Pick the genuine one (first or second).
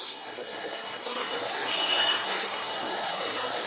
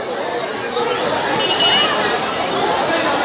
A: second